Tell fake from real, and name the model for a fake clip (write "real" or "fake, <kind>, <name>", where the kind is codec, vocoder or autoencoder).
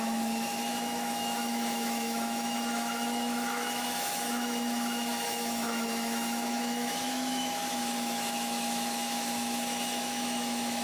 fake, autoencoder, DAC-VAE